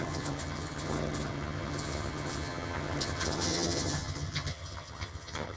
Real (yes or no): no